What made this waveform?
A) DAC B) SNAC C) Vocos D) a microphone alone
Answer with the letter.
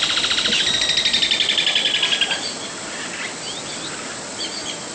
D